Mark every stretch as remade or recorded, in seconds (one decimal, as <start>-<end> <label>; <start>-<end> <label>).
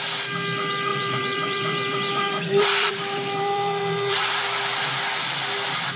0.0-0.9 recorded; 0.9-4.4 remade; 4.4-6.0 recorded